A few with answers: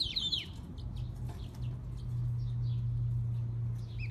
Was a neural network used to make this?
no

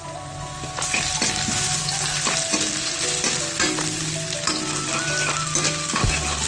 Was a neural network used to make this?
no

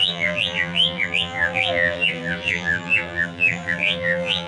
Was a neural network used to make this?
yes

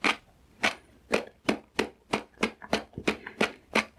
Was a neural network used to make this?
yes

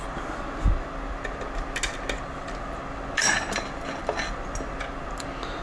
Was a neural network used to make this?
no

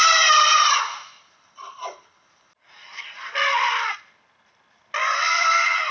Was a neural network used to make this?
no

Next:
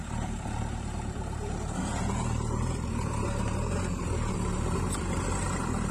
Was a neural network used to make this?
yes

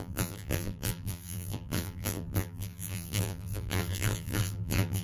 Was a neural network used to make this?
yes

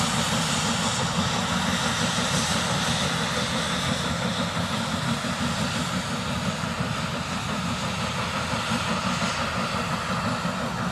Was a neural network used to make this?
no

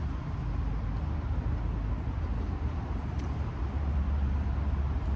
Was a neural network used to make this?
no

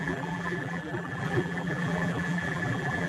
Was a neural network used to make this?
yes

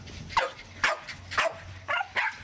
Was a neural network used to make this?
no